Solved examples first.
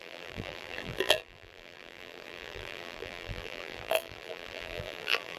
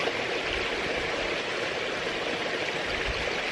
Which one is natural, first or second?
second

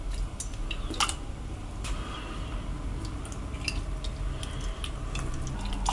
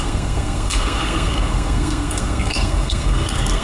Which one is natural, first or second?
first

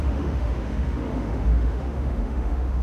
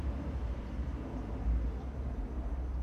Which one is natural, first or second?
second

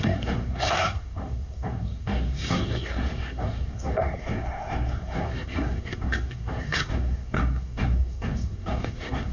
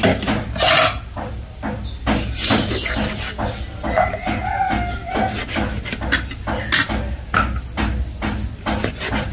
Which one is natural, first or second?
second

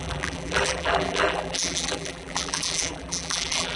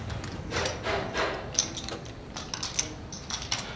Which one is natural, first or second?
second